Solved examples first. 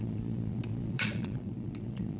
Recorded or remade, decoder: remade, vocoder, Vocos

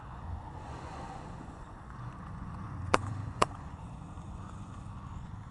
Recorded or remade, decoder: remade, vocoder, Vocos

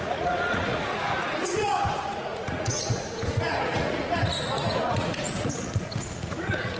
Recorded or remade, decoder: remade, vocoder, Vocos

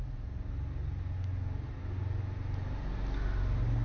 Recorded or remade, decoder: recorded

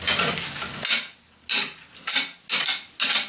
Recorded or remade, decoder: recorded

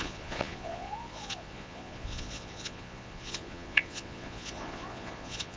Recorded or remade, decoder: remade, vocoder, Vocos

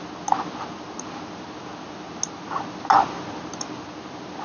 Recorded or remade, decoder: recorded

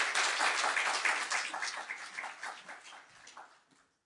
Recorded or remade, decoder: recorded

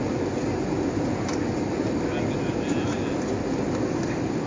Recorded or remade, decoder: recorded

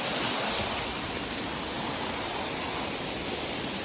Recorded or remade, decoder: recorded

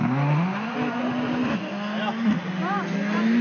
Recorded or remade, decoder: recorded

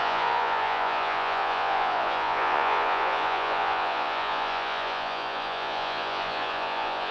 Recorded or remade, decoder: remade, vocoder, Vocos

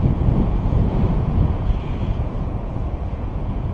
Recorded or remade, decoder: remade, vocoder, Vocos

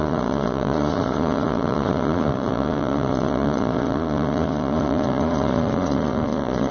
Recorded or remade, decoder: remade, vocoder, Vocos